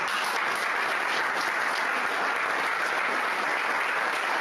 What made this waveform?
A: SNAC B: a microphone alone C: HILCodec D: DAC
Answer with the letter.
B